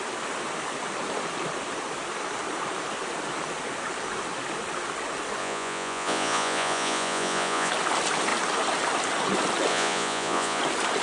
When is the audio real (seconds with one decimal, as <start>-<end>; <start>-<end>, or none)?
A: 0.0-5.4; 7.7-9.7; 10.6-11.0